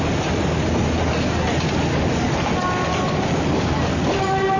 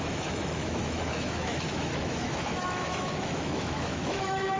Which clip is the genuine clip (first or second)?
first